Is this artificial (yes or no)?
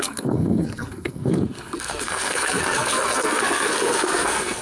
yes